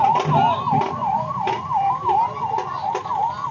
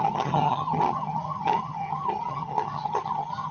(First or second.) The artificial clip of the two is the second